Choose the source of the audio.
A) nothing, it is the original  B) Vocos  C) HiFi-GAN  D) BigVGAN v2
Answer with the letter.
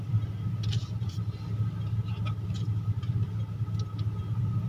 A